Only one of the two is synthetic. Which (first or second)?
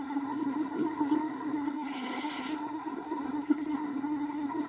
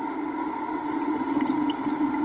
first